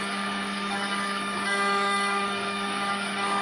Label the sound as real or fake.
fake